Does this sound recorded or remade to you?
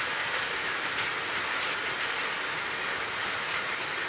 recorded